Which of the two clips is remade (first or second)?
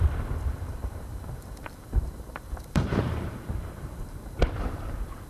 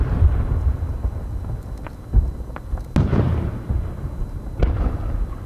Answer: first